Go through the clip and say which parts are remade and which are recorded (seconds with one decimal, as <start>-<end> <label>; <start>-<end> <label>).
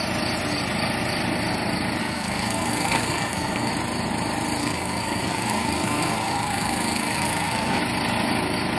0.0-2.0 recorded; 2.0-3.7 remade; 3.7-4.6 recorded; 4.6-7.8 remade; 7.8-8.8 recorded